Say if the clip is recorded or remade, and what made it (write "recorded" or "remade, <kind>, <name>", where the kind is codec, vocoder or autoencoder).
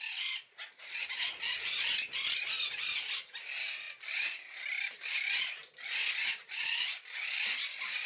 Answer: recorded